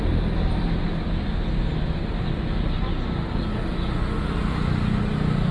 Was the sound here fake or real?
real